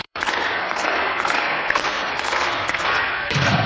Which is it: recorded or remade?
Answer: remade